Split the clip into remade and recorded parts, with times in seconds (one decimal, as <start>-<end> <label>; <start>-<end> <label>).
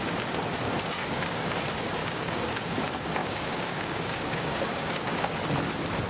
0.0-1.0 recorded; 1.0-1.5 remade; 1.5-2.0 recorded; 2.0-2.6 remade; 2.6-3.2 recorded; 3.2-5.3 remade; 5.3-6.1 recorded